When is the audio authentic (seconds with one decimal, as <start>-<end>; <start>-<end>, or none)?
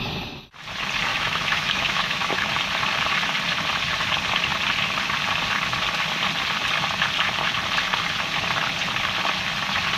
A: 0.0-1.1; 2.5-10.0